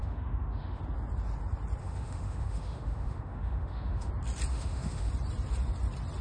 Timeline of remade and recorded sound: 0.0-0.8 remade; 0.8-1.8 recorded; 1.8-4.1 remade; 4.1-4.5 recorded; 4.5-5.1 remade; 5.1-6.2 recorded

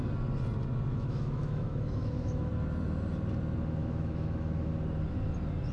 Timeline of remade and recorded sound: 0.0-0.9 recorded; 0.9-2.5 remade; 2.5-3.8 recorded; 3.8-4.7 remade; 4.7-5.7 recorded

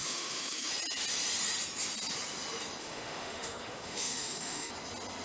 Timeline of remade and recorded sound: 0.0-0.7 remade; 0.7-2.8 recorded; 2.8-4.7 remade; 4.7-5.2 recorded

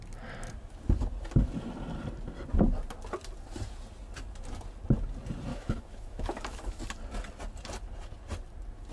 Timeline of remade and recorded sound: 0.0-5.5 recorded; 5.5-6.8 remade; 6.8-8.9 recorded

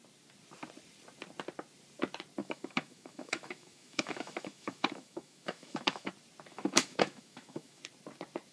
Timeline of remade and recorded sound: 0.0-2.4 recorded; 2.4-6.1 remade; 6.1-6.5 recorded; 6.5-7.8 remade; 7.8-8.5 recorded

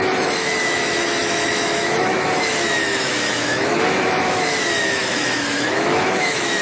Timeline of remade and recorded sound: 0.0-6.6 remade

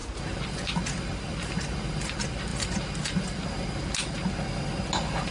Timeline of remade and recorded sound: 0.0-5.3 recorded

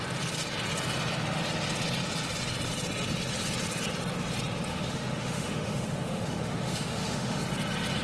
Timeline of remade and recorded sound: 0.0-4.7 recorded; 4.7-7.4 remade; 7.4-8.0 recorded